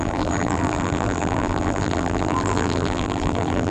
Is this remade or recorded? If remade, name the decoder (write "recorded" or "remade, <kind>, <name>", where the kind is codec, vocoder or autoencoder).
remade, vocoder, BigVGAN v2